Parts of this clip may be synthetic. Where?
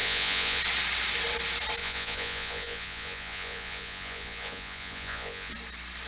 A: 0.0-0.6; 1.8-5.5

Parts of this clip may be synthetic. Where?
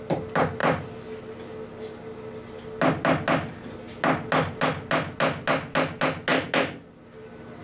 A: none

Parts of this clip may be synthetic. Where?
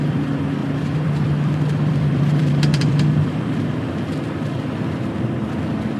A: 0.6-4.2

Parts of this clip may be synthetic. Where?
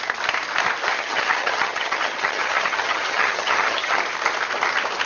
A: 0.9-4.0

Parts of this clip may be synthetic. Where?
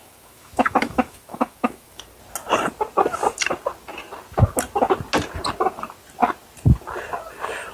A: 0.0-2.0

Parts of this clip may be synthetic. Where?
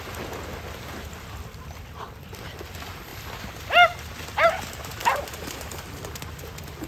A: none